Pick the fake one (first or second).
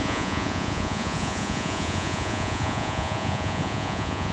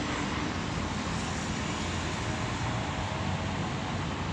first